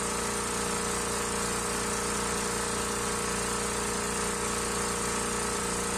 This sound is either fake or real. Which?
real